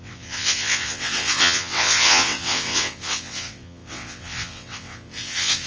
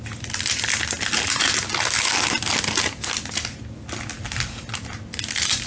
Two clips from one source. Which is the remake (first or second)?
first